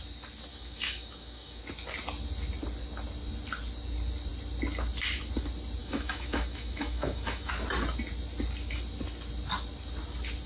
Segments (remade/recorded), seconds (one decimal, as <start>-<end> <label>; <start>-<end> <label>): 0.0-0.5 recorded; 0.5-1.6 remade; 1.6-5.8 recorded; 5.8-7.5 remade; 7.5-10.5 recorded